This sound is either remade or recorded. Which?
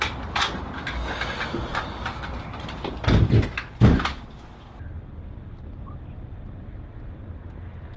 recorded